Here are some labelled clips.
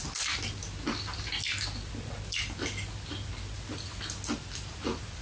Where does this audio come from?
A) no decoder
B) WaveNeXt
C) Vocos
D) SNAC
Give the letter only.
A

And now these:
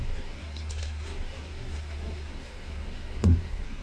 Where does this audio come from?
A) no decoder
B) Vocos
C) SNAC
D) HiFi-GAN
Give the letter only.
C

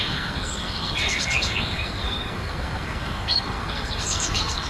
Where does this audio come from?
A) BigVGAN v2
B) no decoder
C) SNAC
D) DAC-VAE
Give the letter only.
C